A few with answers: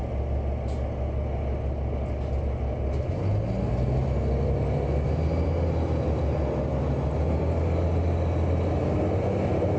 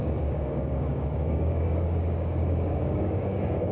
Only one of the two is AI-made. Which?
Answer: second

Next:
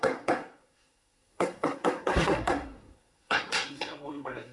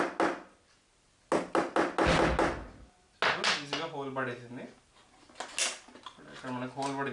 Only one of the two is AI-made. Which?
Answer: first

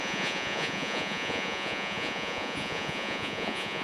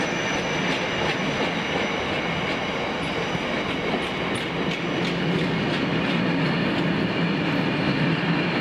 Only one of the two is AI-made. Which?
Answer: first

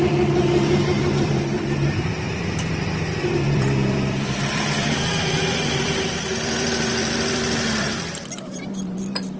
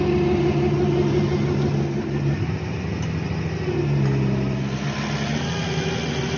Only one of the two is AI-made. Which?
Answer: first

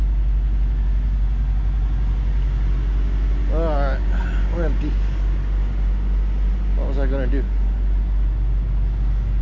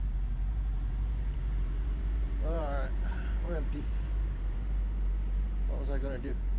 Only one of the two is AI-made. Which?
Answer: second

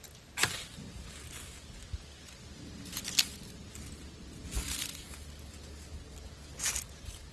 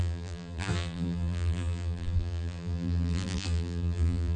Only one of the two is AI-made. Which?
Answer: second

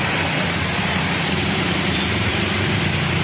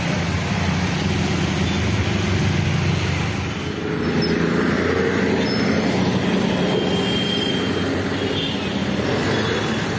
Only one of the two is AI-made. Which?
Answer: first